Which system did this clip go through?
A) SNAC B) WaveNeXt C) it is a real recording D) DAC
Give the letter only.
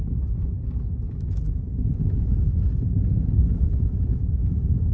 C